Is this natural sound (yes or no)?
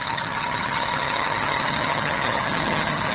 no